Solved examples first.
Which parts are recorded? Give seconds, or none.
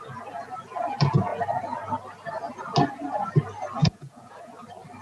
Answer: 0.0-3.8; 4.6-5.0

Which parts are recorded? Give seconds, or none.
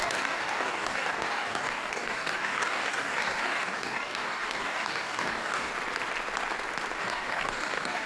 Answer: 5.7-7.0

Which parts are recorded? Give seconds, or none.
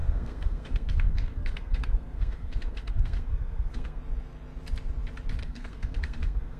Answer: 4.0-5.4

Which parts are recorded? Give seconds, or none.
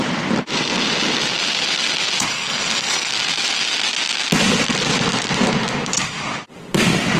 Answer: 0.0-2.3; 3.1-7.2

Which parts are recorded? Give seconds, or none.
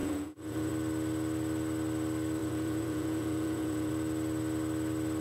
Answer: 0.7-2.4; 3.9-5.2